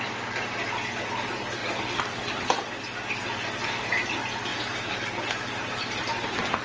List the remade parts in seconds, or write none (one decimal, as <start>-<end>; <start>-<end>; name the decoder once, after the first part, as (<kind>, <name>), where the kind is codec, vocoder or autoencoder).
4.5-6.6 (vocoder, BigVGAN v2)